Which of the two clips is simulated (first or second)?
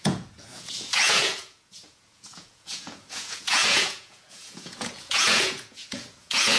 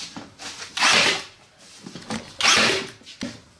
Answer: first